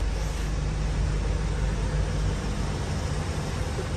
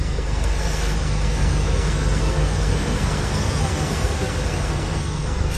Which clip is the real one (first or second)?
first